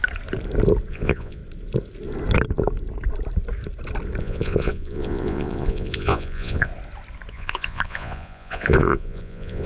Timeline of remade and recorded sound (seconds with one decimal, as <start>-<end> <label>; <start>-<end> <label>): 0.0-0.9 recorded; 0.9-1.4 remade; 1.4-4.2 recorded; 4.2-6.7 remade; 6.7-7.3 recorded; 7.3-9.7 remade